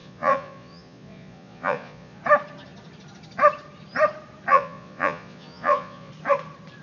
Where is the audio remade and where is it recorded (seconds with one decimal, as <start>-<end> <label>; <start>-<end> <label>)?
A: 0.0-2.2 remade; 2.2-4.5 recorded; 4.5-6.1 remade; 6.1-6.8 recorded

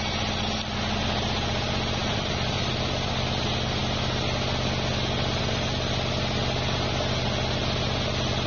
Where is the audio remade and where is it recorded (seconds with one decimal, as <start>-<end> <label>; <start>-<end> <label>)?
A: 0.0-2.0 recorded; 2.0-2.7 remade; 2.7-8.5 recorded